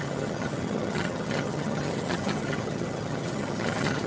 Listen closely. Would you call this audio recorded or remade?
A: remade